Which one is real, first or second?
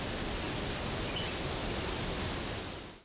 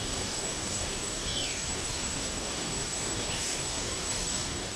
first